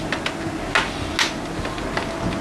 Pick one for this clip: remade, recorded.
recorded